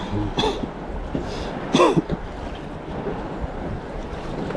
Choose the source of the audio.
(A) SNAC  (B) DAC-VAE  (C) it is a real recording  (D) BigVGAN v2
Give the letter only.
C